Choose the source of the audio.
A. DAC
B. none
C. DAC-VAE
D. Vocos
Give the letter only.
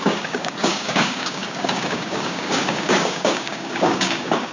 A